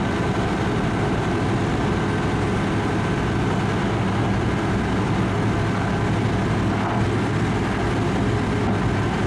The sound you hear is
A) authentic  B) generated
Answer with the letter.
A